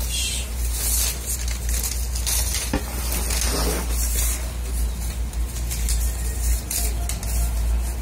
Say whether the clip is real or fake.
real